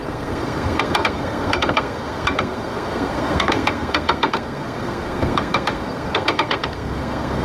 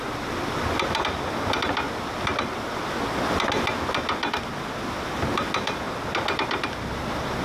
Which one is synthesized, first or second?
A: first